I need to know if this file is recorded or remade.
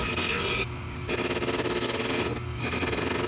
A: recorded